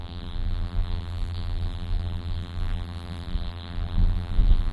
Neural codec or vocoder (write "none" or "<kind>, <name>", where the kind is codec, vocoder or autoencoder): vocoder, BigVGAN v2